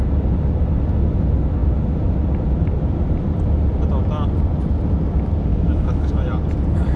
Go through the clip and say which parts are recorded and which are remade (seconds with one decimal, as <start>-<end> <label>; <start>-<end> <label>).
0.0-5.5 recorded; 5.5-6.1 remade; 6.1-7.0 recorded